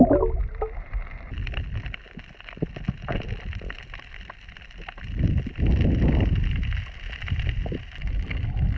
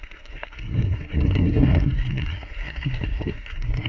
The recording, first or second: first